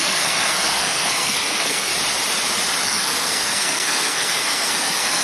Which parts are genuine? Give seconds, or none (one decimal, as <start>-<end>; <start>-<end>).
1.9-2.8